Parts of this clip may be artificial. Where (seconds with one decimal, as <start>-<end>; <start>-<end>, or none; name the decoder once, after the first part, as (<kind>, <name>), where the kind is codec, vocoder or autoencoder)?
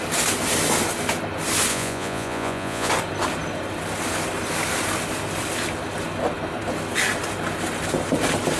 1.7-2.9 (vocoder, Vocos)